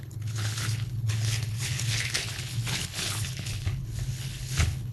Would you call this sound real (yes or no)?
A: no